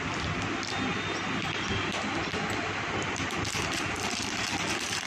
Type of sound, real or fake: real